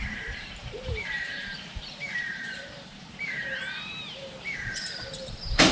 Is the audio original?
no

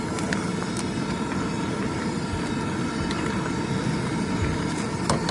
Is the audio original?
yes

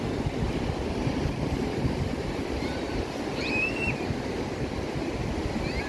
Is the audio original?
no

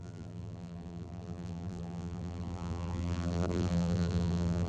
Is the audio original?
no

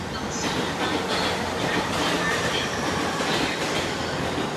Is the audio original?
yes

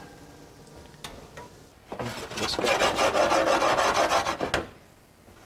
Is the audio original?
yes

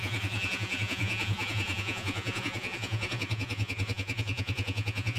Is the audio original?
no